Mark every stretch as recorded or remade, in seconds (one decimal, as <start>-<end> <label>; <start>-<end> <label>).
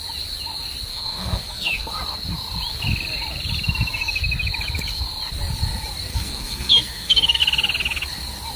0.0-0.9 recorded; 0.9-1.9 remade; 1.9-6.1 recorded; 6.1-7.4 remade; 7.4-8.6 recorded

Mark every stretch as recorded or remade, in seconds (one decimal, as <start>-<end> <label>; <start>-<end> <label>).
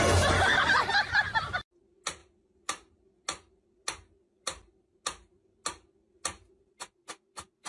0.0-7.7 recorded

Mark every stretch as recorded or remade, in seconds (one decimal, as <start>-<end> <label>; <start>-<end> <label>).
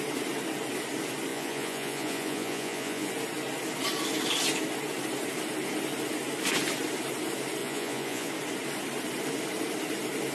0.0-1.3 recorded; 1.3-3.1 remade; 3.1-7.6 recorded; 7.6-8.3 remade; 8.3-10.3 recorded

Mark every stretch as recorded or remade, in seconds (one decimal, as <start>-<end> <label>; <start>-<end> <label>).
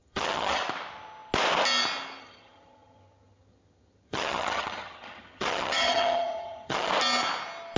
0.0-0.6 remade; 0.6-2.2 recorded; 2.2-6.9 remade; 6.9-7.8 recorded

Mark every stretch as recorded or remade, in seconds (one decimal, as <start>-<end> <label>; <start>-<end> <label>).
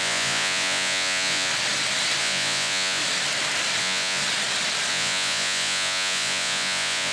0.0-1.5 remade; 1.5-2.2 recorded; 2.2-3.0 remade; 3.0-3.8 recorded; 3.8-4.2 remade; 4.2-4.9 recorded; 4.9-7.1 remade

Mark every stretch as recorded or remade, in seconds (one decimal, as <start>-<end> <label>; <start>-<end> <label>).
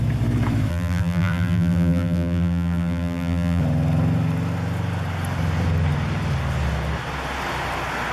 0.0-0.7 recorded; 0.7-3.6 remade; 3.6-8.1 recorded